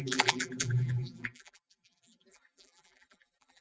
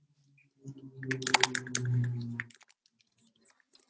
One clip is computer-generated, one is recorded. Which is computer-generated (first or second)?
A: first